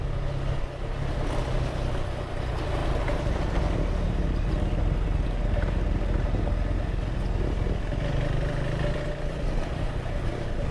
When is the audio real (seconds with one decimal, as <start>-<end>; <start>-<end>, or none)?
0.0-2.8; 3.6-10.7